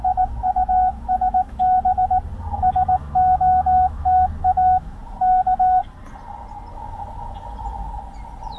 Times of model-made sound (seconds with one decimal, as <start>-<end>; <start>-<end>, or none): 0.9-1.6; 3.0-5.0